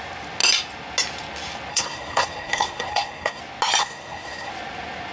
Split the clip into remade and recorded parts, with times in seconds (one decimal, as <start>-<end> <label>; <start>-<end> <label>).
0.0-1.7 recorded; 1.7-3.4 remade; 3.4-3.8 recorded; 3.8-4.5 remade; 4.5-5.1 recorded

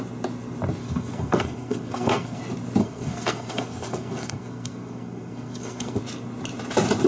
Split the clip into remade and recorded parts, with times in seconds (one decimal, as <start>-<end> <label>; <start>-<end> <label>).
0.0-0.8 recorded; 0.8-2.4 remade; 2.4-2.8 recorded; 2.8-6.0 remade; 6.0-7.1 recorded

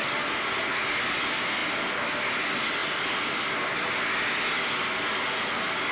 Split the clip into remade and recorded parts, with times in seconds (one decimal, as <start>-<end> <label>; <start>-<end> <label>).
0.0-5.9 recorded

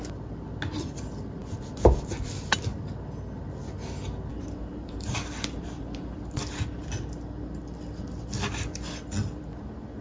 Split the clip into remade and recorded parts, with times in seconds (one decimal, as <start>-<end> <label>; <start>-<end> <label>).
0.0-10.0 recorded

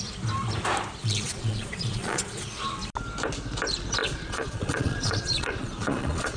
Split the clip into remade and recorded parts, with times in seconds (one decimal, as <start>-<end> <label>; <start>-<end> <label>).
0.0-1.0 recorded; 1.0-2.6 remade; 2.6-4.0 recorded; 4.0-6.4 remade

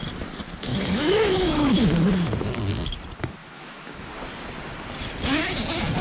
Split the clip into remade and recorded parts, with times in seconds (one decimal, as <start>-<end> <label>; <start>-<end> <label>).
0.0-0.7 recorded; 0.7-1.7 remade; 1.7-3.4 recorded; 3.4-4.1 remade; 4.1-6.0 recorded

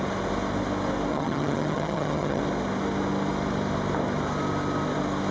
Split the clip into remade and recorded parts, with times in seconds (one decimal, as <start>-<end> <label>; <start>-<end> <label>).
0.0-1.1 recorded; 1.1-2.4 remade; 2.4-5.3 recorded